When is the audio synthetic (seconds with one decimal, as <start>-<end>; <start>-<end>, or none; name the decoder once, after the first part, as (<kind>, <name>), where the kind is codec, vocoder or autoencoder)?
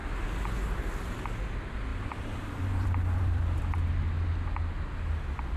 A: 0.0-1.2 (vocoder, BigVGAN v2); 1.9-3.6